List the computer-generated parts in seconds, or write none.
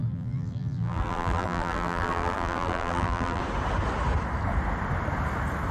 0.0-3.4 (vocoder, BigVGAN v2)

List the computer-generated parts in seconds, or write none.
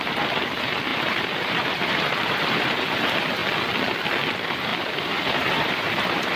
0.0-3.4 (vocoder, BigVGAN v2); 4.3-6.4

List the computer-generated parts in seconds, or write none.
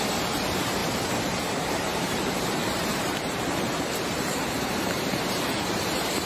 0.0-6.3 (vocoder, BigVGAN v2)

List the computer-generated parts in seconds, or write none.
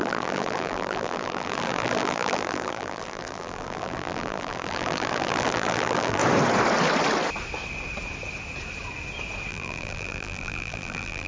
0.0-6.2 (vocoder, BigVGAN v2); 9.5-11.3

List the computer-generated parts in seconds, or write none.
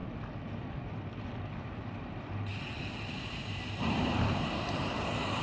1.3-2.5 (vocoder, BigVGAN v2); 3.1-5.4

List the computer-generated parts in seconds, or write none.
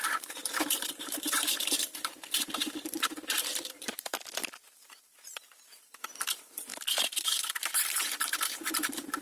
0.0-6.7 (vocoder, BigVGAN v2); 7.7-9.2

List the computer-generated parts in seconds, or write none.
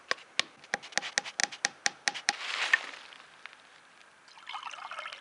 1.4-4.0 (vocoder, BigVGAN v2)